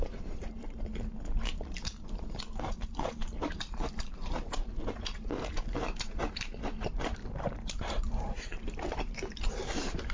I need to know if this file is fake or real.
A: fake